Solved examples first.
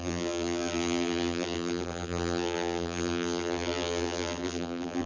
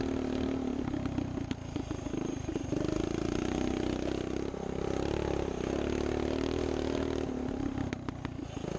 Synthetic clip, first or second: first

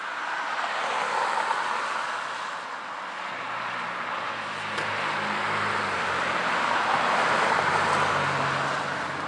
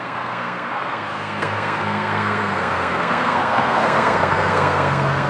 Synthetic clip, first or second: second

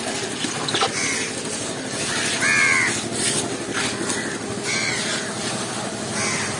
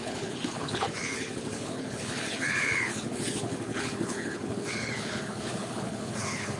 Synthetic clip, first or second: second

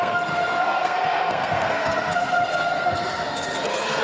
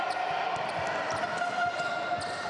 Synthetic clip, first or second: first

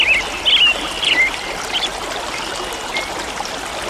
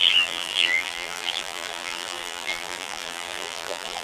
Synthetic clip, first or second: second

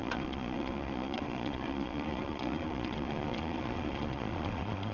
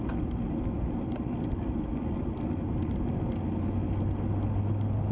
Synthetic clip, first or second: first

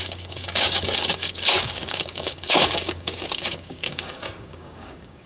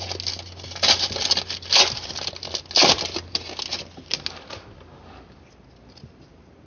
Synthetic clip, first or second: first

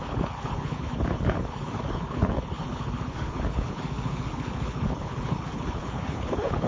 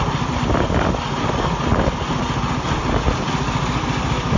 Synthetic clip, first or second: first